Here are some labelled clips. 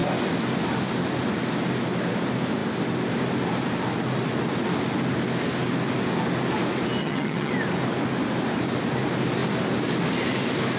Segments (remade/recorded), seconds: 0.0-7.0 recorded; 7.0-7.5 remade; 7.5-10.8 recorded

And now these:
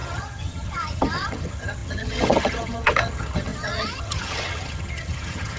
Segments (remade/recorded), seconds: 0.0-5.6 remade

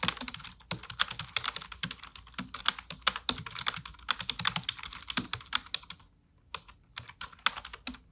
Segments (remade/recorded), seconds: 0.0-8.1 recorded

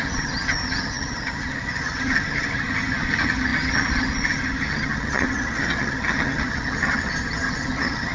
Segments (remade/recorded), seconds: 0.0-8.1 remade

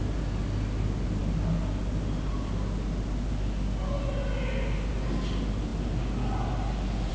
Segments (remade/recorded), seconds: 0.0-7.1 recorded

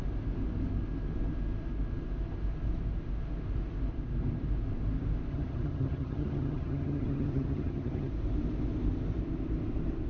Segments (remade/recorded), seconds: 0.0-5.3 recorded; 5.3-8.1 remade; 8.1-10.1 recorded

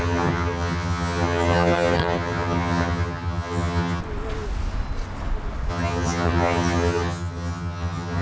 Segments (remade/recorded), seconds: 0.0-4.0 remade; 4.0-5.7 recorded; 5.7-8.2 remade